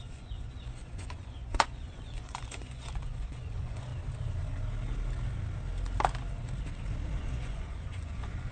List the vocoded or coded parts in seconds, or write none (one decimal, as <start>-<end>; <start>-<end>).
0.0-3.9; 7.2-8.5